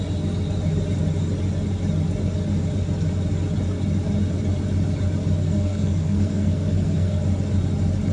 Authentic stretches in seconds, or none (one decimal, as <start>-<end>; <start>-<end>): 0.0-5.4; 7.2-8.1